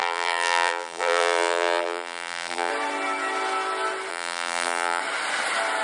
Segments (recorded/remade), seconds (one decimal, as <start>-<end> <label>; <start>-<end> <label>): 0.0-2.7 remade; 2.7-4.1 recorded; 4.1-5.0 remade; 5.0-5.8 recorded